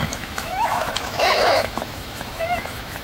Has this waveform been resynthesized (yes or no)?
yes